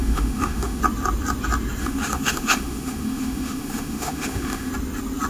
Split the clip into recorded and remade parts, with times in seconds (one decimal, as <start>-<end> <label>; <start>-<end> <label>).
0.0-0.8 remade; 0.8-1.8 recorded; 1.8-4.7 remade; 4.7-5.3 recorded